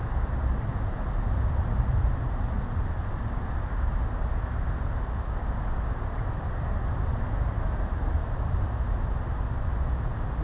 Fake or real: real